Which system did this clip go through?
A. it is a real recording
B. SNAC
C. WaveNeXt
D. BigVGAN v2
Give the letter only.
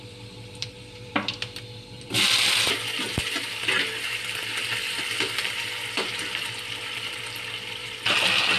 D